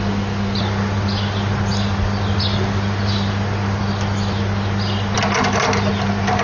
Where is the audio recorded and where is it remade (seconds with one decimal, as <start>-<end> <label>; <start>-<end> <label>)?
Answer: 0.0-6.4 recorded